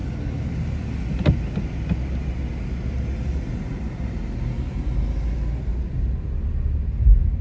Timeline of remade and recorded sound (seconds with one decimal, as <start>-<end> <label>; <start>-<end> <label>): 0.0-7.4 recorded

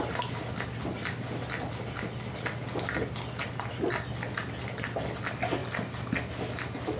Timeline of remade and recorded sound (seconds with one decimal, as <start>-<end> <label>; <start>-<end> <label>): 0.0-7.0 recorded

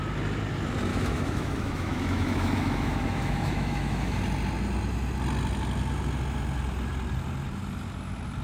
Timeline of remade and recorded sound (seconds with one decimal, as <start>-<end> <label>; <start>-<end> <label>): 0.0-0.9 recorded; 0.9-4.2 remade; 4.2-8.4 recorded